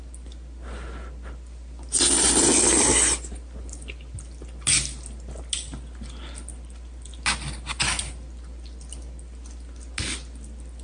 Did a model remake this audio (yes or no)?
no